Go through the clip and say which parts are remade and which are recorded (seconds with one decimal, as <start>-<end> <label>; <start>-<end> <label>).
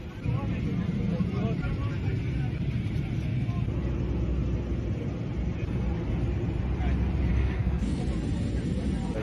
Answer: 0.0-7.3 recorded; 7.3-8.0 remade; 8.0-9.2 recorded